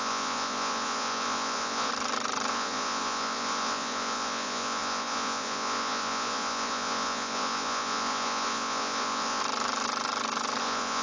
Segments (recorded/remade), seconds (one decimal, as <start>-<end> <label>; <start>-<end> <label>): 0.0-1.9 remade; 1.9-2.5 recorded; 2.5-9.4 remade; 9.4-10.6 recorded; 10.6-11.0 remade